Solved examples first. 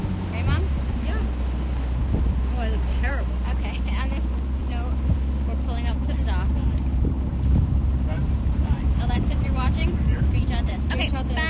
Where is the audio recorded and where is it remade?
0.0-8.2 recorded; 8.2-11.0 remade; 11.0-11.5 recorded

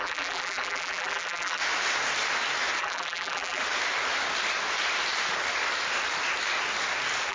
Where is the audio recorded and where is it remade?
0.0-1.6 remade; 1.6-2.8 recorded; 2.8-3.6 remade; 3.6-7.3 recorded

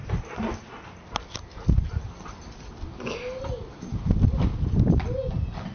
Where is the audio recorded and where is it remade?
0.0-5.7 recorded